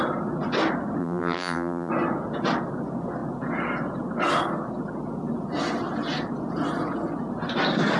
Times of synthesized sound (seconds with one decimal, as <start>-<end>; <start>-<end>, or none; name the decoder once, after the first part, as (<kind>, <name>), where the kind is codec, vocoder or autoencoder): 1.0-1.9 (vocoder, BigVGAN v2)